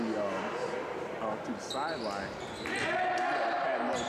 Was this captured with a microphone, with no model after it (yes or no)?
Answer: yes